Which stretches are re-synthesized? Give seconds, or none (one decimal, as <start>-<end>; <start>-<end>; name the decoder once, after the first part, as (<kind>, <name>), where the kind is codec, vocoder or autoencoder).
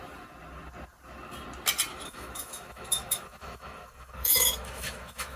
1.9-5.4 (autoencoder, DAC-VAE)